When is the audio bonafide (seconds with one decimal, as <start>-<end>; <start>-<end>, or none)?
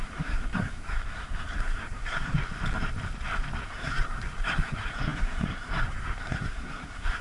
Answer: 2.5-3.6